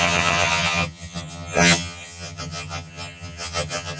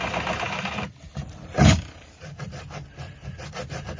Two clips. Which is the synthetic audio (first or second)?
first